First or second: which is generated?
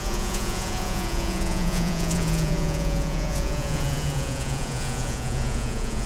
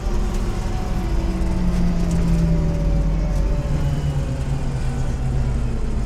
first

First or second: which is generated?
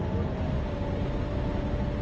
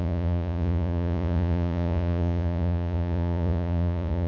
second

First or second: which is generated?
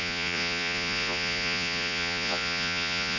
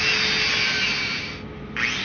first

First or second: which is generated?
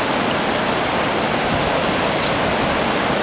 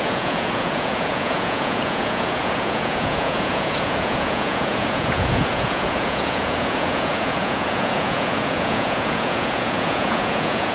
second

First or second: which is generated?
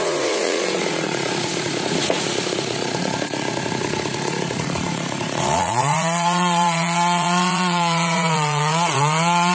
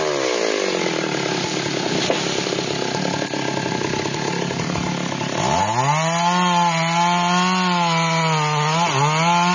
first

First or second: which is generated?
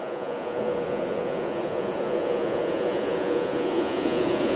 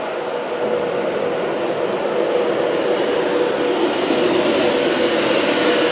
first